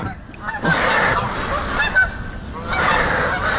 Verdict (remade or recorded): recorded